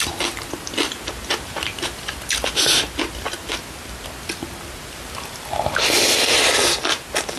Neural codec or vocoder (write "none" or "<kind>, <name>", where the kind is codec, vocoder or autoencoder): none